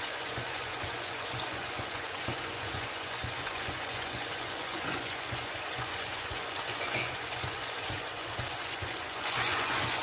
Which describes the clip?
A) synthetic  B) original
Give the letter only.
A